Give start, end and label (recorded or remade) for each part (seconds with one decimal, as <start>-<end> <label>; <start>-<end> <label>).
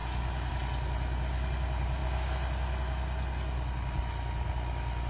0.0-5.1 recorded